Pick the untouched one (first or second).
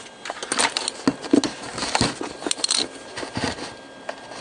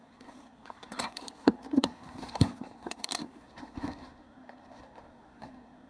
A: first